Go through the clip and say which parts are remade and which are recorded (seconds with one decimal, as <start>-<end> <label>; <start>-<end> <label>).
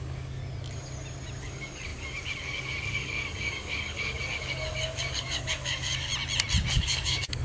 0.0-0.4 remade; 0.4-1.4 recorded; 1.4-6.1 remade; 6.1-6.7 recorded; 6.7-7.4 remade